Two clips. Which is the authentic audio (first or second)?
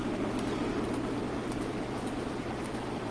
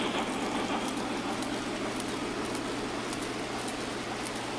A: second